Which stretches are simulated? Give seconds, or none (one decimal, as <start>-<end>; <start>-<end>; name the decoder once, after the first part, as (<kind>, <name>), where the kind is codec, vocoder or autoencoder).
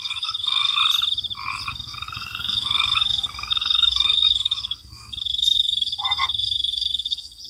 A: 0.0-0.8 (codec, SNAC); 1.7-7.5